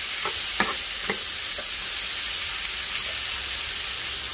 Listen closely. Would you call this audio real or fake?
real